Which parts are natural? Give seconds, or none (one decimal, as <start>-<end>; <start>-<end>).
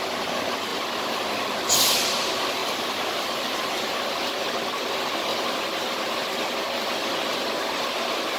0.0-2.6; 4.1-5.3; 6.5-8.4